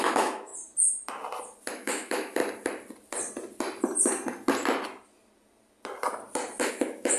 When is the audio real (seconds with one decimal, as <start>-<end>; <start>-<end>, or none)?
0.5-1.7; 2.4-6.7